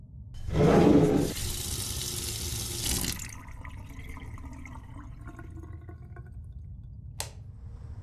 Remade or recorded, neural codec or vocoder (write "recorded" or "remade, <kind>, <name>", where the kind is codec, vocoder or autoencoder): recorded